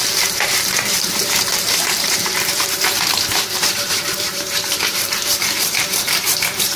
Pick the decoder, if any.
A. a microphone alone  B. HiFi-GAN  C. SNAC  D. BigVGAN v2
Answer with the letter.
D